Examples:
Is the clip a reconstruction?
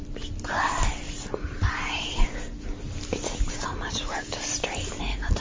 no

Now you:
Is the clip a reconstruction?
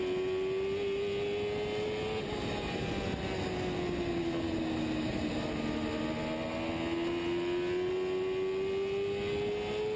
no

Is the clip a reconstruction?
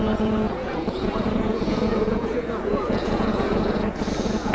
yes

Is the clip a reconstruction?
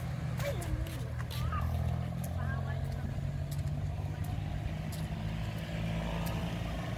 no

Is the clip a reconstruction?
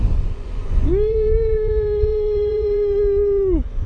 yes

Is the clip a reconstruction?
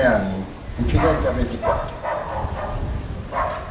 no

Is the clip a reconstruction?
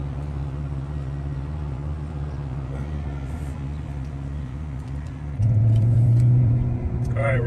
yes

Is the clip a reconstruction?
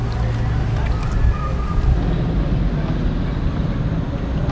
no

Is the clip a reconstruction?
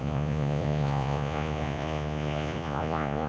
yes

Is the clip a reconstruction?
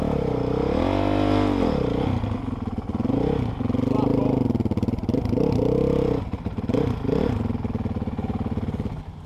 no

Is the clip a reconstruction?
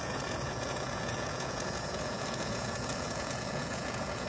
yes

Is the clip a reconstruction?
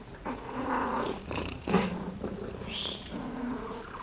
yes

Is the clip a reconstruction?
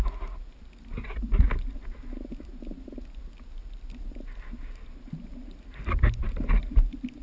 no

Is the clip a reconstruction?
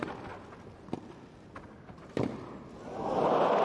no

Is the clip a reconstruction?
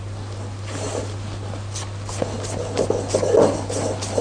no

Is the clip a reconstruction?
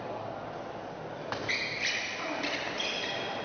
no